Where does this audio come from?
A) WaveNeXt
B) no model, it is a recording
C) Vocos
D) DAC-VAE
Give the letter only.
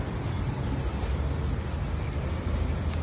B